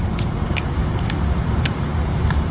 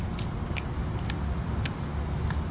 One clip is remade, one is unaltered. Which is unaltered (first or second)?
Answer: second